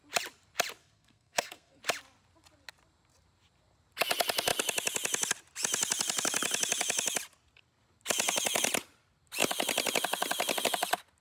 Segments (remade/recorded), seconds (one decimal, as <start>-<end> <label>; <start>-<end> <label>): 0.0-0.8 recorded; 0.8-1.8 remade; 1.8-11.2 recorded